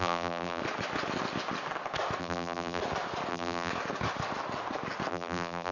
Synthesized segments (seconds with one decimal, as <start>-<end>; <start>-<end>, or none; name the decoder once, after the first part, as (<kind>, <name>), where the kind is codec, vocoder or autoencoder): 0.0-0.6 (vocoder, BigVGAN v2); 2.2-2.8; 3.3-3.7; 5.1-5.7